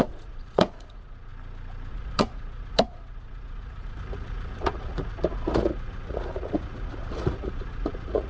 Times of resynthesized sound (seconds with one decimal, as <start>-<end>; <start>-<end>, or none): 0.0-1.3; 1.9-8.3